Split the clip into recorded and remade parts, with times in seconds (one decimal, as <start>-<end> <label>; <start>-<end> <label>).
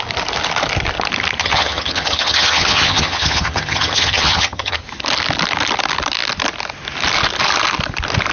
0.0-1.4 recorded; 1.4-4.8 remade; 4.8-8.3 recorded